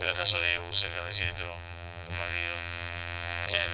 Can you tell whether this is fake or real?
fake